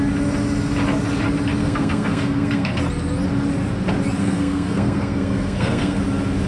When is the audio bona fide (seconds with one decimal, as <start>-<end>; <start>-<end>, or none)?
0.0-1.6; 2.8-4.2; 6.0-6.5